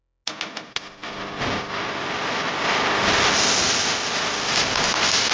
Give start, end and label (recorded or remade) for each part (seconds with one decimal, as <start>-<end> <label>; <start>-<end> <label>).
0.0-5.3 recorded